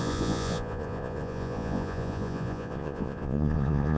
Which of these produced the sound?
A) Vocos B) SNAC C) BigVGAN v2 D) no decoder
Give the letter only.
A